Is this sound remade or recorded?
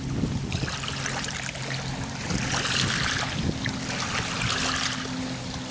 recorded